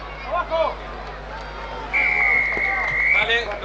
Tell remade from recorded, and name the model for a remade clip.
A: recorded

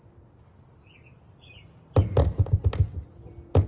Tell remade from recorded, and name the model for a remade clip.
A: recorded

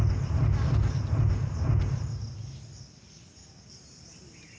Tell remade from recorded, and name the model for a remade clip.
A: recorded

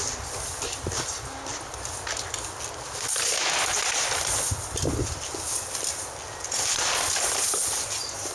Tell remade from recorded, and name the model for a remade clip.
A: recorded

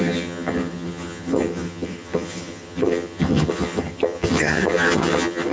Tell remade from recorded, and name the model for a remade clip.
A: remade, vocoder, HiFi-GAN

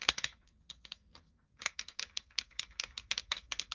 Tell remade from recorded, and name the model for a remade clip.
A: remade, codec, SNAC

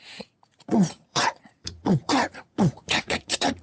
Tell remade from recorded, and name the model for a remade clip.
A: remade, vocoder, Vocos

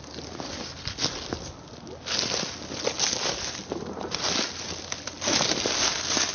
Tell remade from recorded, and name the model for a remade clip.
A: recorded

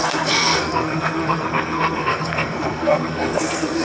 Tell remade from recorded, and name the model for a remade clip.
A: remade, codec, SNAC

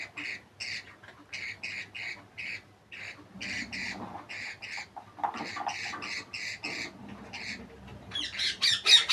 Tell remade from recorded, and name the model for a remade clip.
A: recorded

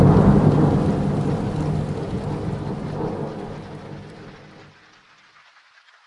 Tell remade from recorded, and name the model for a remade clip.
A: recorded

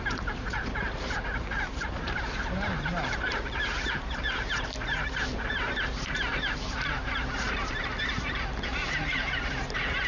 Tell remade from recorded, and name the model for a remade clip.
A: remade, vocoder, BigVGAN v2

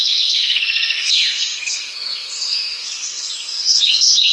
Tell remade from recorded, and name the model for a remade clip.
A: remade, codec, SNAC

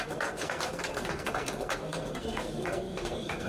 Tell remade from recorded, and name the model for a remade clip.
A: remade, codec, SNAC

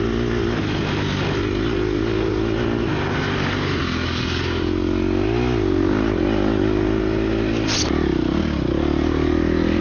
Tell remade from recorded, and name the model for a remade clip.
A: recorded